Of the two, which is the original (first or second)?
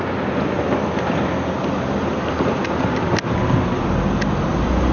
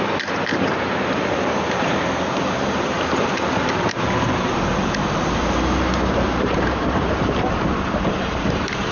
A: first